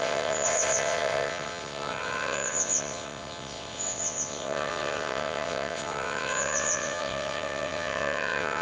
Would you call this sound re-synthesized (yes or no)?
yes